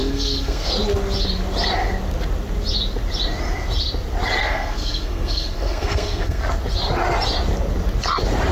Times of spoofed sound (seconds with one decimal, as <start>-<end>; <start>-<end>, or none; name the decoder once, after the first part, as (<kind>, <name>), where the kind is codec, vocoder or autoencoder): 0.0-0.7 (codec, SNAC); 4.4-6.4